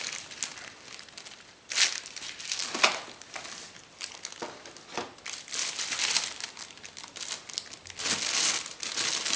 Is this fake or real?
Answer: real